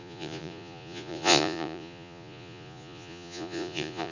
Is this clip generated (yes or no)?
yes